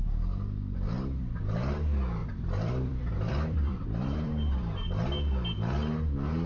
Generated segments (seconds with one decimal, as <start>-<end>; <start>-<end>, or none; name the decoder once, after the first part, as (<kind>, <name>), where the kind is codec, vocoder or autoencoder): 2.2-4.3 (vocoder, BigVGAN v2)